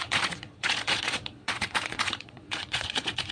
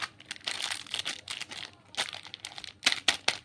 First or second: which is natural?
second